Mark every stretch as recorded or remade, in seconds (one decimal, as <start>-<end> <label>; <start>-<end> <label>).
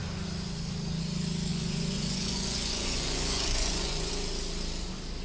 0.0-1.5 recorded; 1.5-4.1 remade; 4.1-5.2 recorded